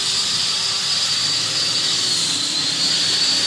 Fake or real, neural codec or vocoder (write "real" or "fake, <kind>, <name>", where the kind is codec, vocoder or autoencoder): real